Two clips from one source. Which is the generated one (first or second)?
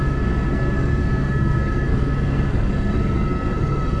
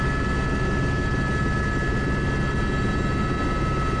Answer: first